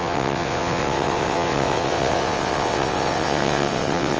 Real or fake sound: fake